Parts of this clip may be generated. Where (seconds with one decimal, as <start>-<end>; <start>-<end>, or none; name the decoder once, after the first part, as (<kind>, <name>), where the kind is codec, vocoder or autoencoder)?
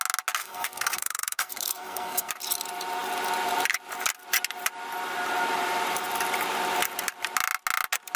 0.4-2.3 (codec, SNAC)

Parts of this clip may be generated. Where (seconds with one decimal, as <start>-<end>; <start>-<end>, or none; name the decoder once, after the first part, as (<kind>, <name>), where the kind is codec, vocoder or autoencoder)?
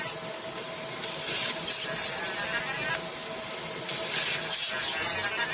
none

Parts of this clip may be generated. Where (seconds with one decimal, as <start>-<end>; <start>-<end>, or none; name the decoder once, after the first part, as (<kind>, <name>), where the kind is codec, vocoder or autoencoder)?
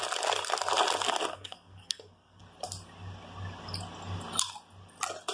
1.3-2.4 (codec, SNAC)